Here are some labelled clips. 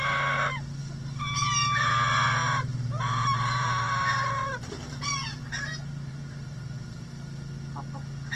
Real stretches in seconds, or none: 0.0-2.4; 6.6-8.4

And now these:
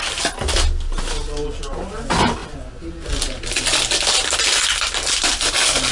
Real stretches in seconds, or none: 0.0-5.9